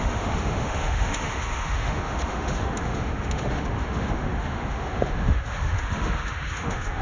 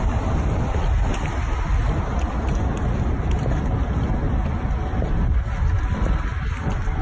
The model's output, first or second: first